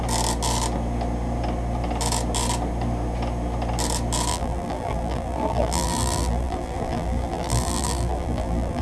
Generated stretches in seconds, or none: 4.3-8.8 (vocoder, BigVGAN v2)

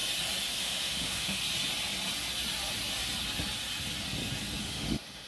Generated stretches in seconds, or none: 0.6-1.4 (autoencoder, DAC-VAE); 4.6-5.3

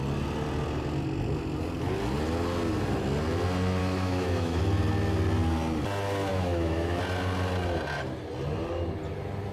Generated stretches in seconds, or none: 3.8-4.6 (autoencoder, DAC-VAE); 6.3-7.0

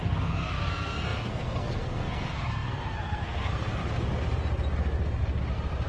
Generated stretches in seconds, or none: 0.0-3.8 (codec, SNAC)

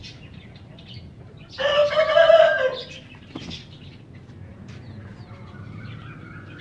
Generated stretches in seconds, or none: 1.8-3.5 (vocoder, BigVGAN v2)

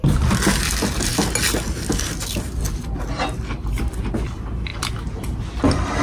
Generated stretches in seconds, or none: none

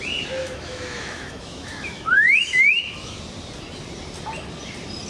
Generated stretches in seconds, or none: 0.4-3.2 (autoencoder, DAC-VAE)